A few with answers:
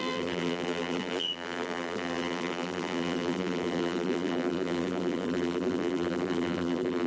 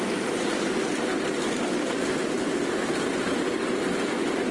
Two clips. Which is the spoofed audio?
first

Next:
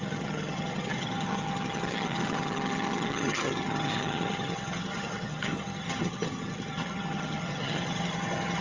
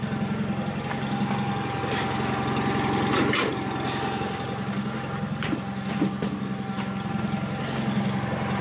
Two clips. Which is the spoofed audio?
first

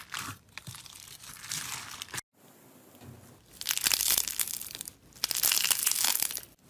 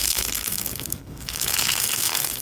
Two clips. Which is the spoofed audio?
second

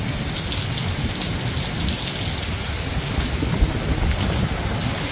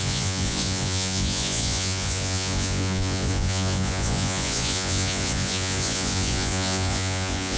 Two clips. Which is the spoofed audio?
second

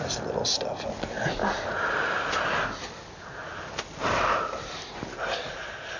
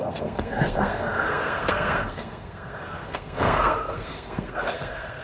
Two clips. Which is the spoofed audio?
second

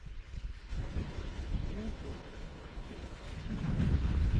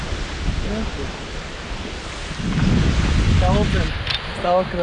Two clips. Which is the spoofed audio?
first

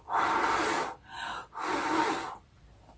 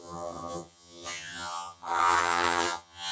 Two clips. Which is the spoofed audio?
second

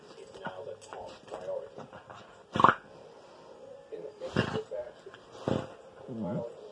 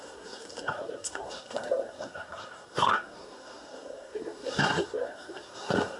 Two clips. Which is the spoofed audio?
second